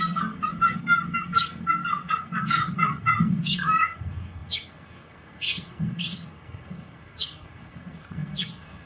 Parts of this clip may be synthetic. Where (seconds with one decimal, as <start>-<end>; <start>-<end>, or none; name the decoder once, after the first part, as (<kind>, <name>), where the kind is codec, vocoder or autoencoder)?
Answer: 0.0-8.9 (codec, SNAC)

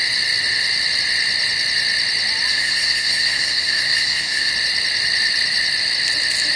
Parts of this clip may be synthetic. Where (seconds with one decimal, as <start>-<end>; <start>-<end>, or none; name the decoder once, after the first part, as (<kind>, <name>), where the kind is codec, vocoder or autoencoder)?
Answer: 2.5-4.5 (codec, SNAC)

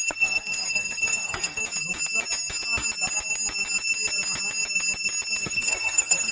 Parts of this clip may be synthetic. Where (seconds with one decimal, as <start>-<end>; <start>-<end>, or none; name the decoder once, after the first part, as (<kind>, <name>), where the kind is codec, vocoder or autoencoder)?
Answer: 0.0-1.6 (codec, SNAC); 5.4-6.3

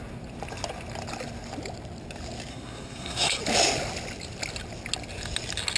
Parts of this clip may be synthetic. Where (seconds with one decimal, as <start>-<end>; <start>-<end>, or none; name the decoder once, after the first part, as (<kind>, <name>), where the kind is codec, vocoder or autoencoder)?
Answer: 2.5-3.4 (codec, SNAC)

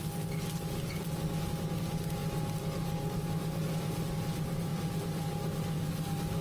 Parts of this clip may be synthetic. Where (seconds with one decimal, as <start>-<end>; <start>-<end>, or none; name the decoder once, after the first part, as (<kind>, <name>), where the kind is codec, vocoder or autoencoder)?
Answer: none

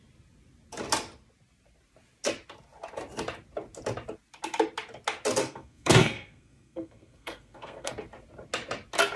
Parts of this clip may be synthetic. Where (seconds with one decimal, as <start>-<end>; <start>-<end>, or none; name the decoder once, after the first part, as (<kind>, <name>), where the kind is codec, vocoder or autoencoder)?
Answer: 5.4-7.9 (codec, SNAC)

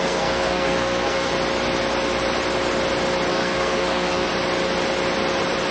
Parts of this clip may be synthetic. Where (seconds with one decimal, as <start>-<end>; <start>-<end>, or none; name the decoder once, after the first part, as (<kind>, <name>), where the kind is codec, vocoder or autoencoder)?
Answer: 0.0-1.3 (codec, SNAC); 3.3-4.3